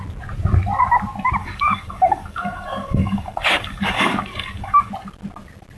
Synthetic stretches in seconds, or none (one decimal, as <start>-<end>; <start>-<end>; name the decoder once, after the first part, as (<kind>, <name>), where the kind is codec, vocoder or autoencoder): 1.4-4.9 (codec, DAC)